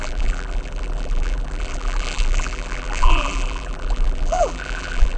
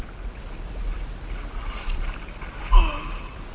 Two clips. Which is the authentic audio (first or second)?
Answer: second